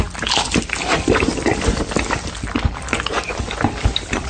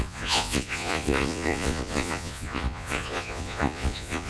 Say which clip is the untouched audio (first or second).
first